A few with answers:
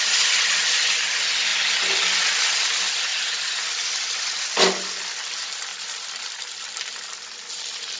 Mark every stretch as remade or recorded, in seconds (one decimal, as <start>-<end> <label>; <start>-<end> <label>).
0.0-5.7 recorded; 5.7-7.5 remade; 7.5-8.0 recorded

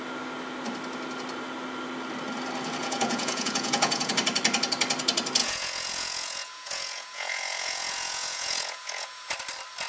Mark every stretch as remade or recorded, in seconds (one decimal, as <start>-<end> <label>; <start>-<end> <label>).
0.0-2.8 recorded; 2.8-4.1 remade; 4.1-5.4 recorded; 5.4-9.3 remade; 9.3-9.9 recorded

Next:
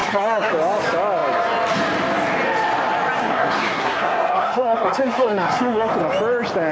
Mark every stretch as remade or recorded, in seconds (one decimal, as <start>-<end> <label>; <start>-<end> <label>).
0.0-0.5 remade; 0.5-3.2 recorded; 3.2-5.9 remade; 5.9-6.7 recorded

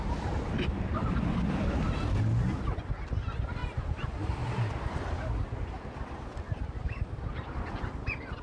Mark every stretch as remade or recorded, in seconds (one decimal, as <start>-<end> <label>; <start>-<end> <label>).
0.0-8.4 recorded